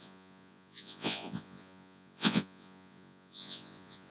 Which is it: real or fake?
fake